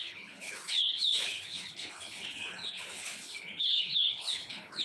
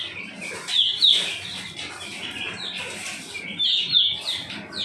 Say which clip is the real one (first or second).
second